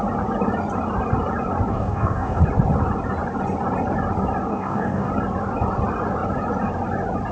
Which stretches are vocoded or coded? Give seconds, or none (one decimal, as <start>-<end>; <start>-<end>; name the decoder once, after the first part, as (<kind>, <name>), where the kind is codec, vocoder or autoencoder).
1.7-2.4 (codec, DAC); 4.5-5.1